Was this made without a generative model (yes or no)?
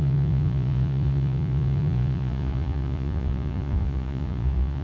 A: no